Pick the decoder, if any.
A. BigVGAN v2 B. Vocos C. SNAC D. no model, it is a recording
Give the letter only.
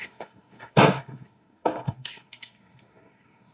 C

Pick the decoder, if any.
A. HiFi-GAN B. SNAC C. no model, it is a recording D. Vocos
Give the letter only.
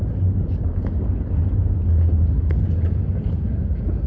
C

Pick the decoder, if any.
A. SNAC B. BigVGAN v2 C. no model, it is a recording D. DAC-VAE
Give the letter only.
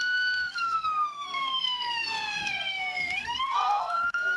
A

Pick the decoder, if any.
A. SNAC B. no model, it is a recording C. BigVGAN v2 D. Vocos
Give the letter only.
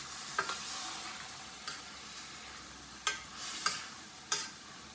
B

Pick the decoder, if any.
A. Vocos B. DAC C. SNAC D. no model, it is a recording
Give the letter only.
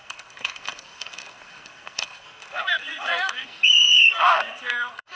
C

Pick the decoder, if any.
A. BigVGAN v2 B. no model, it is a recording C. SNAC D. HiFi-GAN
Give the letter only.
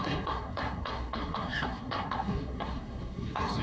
C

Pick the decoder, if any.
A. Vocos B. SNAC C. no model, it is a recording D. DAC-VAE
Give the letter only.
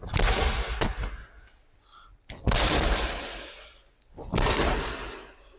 C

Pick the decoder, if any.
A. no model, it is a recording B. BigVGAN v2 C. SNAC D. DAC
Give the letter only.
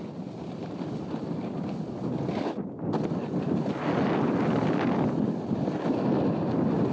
A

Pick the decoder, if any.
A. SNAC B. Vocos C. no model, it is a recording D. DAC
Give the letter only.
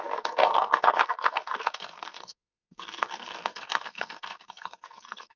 A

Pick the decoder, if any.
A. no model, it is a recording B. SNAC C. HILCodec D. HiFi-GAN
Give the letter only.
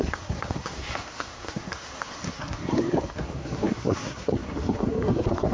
B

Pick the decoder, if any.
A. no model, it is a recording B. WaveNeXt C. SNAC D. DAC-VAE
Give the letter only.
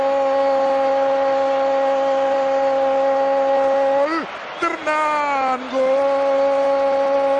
A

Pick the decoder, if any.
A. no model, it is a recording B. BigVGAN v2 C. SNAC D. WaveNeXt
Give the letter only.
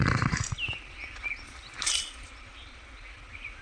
A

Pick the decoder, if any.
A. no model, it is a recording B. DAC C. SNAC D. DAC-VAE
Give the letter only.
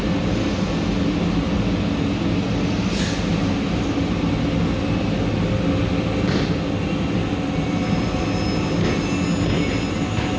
A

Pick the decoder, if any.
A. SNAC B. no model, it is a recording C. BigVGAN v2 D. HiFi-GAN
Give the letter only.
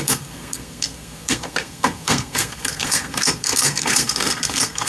A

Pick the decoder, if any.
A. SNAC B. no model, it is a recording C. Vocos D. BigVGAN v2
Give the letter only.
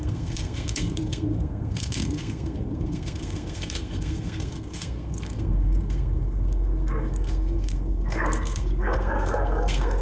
A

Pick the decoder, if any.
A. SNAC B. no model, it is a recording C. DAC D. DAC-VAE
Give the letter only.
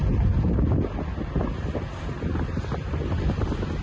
B